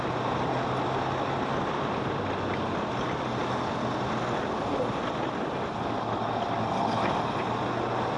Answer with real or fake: real